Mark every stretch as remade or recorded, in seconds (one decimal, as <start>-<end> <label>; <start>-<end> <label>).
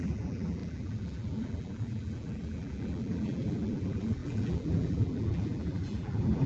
0.0-6.5 remade